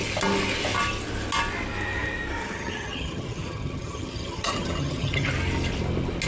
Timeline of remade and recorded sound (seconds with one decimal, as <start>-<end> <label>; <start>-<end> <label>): 0.0-2.4 recorded; 2.4-5.3 remade; 5.3-6.3 recorded

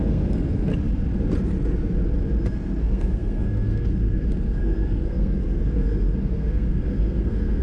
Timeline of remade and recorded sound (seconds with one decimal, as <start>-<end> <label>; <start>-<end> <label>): 0.0-0.7 remade; 0.7-2.8 recorded; 2.8-7.6 remade

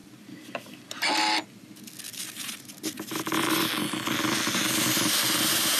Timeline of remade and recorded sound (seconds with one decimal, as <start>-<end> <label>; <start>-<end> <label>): 0.0-5.8 recorded

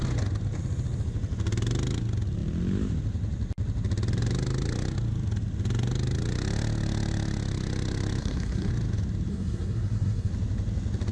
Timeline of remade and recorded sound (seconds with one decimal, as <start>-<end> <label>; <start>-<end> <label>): 0.0-8.2 recorded; 8.2-8.7 remade; 8.7-9.3 recorded; 9.3-10.3 remade; 10.3-11.1 recorded

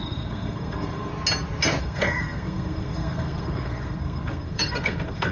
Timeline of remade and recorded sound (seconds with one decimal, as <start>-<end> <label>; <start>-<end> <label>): 0.0-1.1 remade; 1.1-1.8 recorded; 1.8-5.3 remade

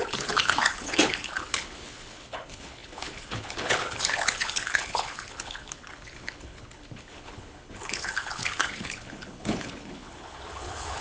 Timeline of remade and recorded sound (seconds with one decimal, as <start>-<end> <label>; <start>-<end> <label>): 0.0-11.0 remade